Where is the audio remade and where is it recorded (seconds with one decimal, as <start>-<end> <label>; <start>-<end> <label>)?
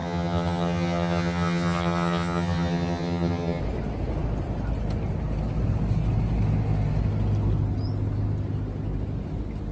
0.0-3.6 remade; 3.6-9.7 recorded